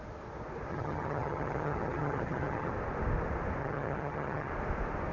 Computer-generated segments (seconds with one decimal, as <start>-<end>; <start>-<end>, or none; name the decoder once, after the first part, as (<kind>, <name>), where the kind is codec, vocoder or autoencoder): 0.7-2.7 (vocoder, HiFi-GAN); 3.6-4.5